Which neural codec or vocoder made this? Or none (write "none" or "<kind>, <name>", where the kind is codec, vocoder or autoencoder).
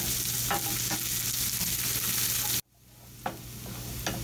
none